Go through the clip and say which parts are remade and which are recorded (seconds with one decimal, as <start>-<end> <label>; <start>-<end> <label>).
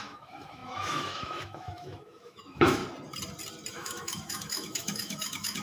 0.0-2.8 remade; 2.8-3.7 recorded; 3.7-5.6 remade